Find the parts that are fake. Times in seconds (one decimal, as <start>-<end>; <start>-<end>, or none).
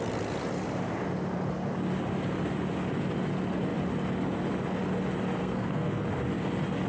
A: 5.4-6.0